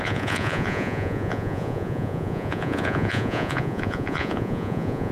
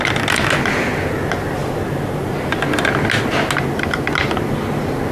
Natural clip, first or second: second